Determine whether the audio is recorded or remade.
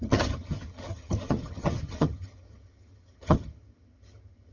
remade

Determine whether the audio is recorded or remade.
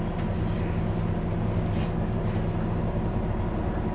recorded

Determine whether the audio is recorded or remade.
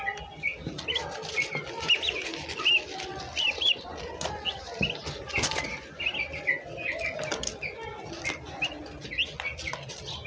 recorded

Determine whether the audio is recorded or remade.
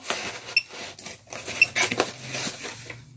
recorded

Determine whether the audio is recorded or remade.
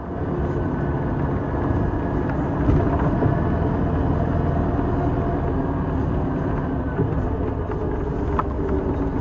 recorded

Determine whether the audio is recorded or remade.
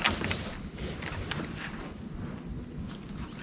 recorded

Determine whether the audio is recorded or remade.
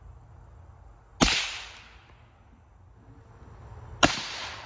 recorded